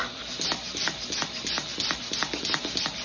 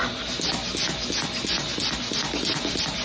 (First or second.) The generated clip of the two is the first